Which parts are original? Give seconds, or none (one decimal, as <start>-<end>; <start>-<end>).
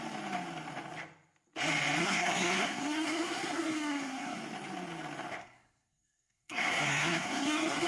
0.0-2.0; 4.4-5.4